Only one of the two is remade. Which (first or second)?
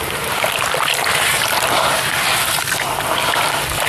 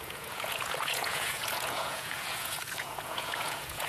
second